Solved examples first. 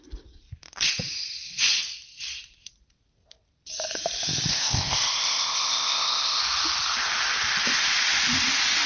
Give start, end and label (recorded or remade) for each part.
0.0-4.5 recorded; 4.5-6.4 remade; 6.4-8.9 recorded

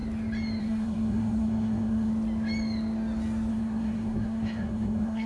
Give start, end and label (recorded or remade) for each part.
0.0-0.6 recorded; 0.6-2.1 remade; 2.1-3.5 recorded; 3.5-5.3 remade

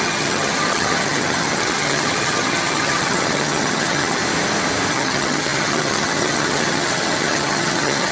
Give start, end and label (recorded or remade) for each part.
0.0-4.2 remade; 4.2-4.9 recorded; 4.9-8.1 remade

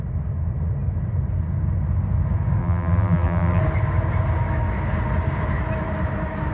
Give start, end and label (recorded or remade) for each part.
0.0-2.6 recorded; 2.6-3.6 remade; 3.6-6.5 recorded

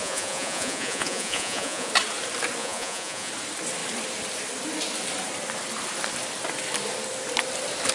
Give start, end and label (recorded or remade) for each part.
0.0-1.9 remade; 1.9-2.6 recorded; 2.6-3.3 remade; 3.3-7.9 recorded

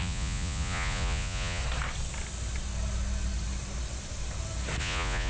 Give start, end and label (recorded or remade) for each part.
0.0-1.6 remade; 1.6-4.8 recorded; 4.8-5.3 remade

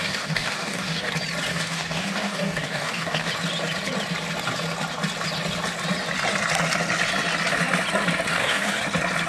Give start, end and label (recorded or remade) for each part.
0.0-1.1 remade; 1.1-1.5 recorded; 1.5-3.3 remade; 3.3-8.3 recorded; 8.3-8.8 remade; 8.8-9.3 recorded